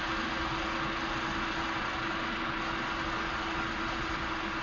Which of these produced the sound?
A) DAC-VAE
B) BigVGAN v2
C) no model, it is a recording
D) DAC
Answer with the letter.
C